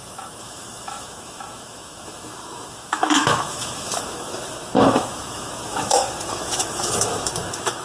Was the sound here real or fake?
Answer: fake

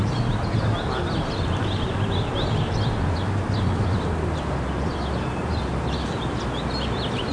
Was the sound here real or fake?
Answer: real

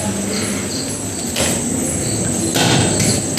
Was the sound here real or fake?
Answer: real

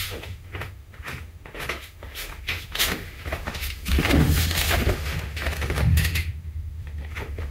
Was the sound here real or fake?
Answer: fake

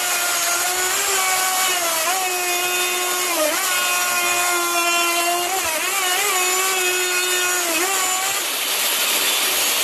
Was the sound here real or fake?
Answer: real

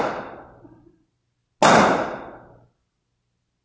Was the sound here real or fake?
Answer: real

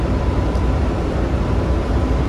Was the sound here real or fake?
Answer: real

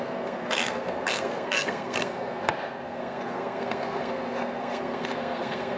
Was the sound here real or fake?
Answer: fake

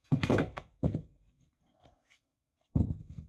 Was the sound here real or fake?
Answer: fake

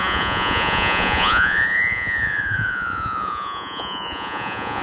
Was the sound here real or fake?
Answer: fake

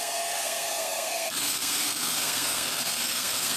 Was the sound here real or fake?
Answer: fake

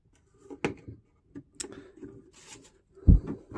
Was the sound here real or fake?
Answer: real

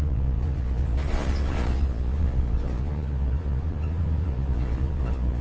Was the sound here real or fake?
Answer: fake